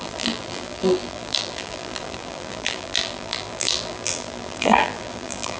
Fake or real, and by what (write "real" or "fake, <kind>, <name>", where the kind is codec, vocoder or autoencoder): fake, vocoder, BigVGAN v2